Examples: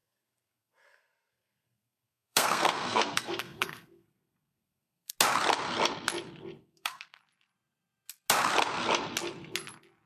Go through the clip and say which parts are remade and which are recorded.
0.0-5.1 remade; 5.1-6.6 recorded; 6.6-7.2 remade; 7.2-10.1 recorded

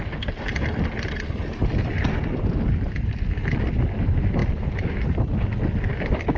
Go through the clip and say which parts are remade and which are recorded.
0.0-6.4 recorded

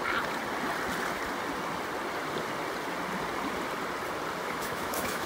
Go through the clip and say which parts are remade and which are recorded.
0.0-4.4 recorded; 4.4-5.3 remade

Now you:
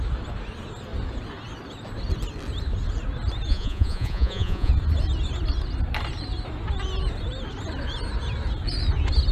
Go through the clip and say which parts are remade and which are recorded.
0.0-3.5 recorded; 3.5-4.7 remade; 4.7-9.3 recorded

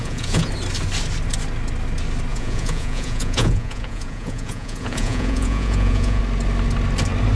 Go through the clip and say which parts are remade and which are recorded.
0.0-0.5 remade; 0.5-2.3 recorded; 2.3-6.2 remade; 6.2-7.3 recorded